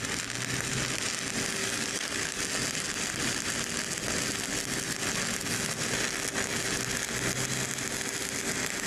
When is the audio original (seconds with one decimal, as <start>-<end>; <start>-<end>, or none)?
0.0-1.6; 2.4-8.9